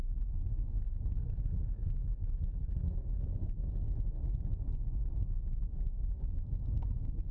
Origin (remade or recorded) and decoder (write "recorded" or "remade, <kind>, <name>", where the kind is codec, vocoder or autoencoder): remade, autoencoder, DAC-VAE